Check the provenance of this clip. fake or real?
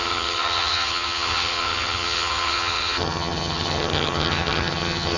fake